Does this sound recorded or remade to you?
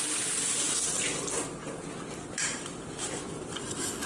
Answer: recorded